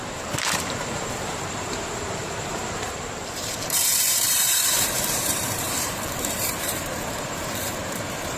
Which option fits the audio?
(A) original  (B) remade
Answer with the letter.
B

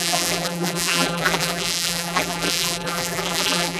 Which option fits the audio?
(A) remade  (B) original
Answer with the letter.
A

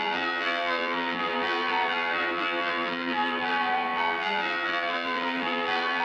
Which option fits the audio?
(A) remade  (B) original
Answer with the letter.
A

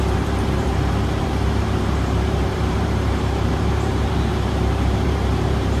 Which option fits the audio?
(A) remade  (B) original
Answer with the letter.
A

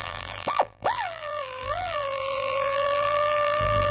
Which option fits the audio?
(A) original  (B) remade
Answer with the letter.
B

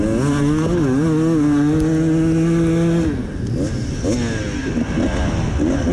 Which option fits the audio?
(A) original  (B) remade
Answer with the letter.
A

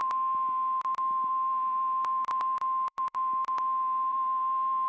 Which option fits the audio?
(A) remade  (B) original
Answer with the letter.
A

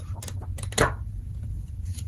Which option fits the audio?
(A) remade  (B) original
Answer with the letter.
A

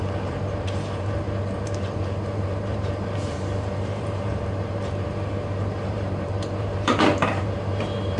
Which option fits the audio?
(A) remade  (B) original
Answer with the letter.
A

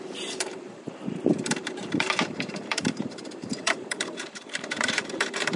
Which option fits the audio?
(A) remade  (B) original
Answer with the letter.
A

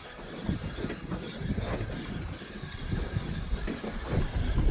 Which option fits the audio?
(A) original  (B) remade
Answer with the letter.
A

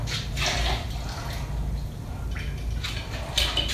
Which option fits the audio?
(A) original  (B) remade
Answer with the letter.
A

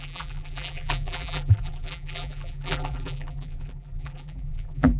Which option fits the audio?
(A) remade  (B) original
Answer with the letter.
A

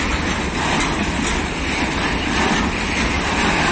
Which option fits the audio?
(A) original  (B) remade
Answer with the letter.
A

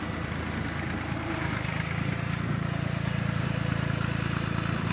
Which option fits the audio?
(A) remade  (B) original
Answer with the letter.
B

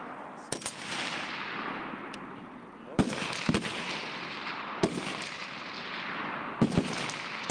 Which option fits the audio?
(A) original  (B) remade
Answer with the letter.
A